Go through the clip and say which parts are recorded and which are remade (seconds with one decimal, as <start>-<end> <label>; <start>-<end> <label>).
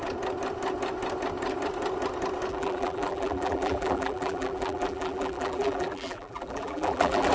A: 0.0-2.5 recorded; 2.5-7.3 remade